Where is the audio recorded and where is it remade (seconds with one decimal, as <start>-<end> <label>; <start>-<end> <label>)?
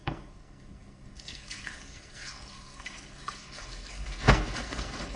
0.0-5.2 remade